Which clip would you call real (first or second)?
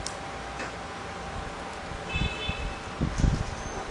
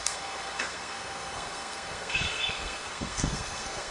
first